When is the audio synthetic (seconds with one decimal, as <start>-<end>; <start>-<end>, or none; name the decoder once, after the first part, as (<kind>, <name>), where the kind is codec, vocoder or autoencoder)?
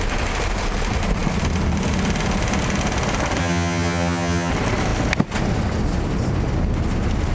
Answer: 3.4-4.5 (vocoder, HiFi-GAN)